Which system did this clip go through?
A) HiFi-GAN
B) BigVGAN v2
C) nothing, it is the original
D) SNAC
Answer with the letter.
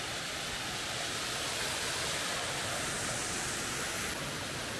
C